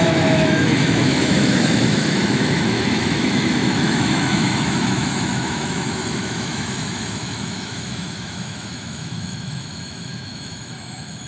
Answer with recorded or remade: remade